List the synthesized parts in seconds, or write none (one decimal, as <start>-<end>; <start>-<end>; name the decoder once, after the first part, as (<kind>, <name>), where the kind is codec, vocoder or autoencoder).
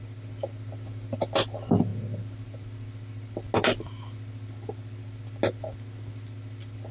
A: none